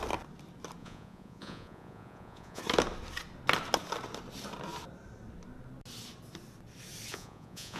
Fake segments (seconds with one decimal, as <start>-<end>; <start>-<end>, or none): 0.8-2.6; 7.1-7.8